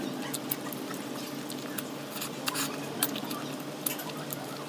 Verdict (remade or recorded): recorded